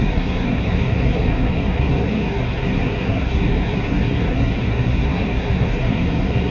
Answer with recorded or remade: remade